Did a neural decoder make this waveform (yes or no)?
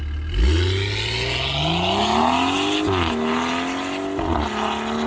no